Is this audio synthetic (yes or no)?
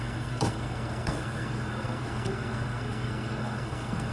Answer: yes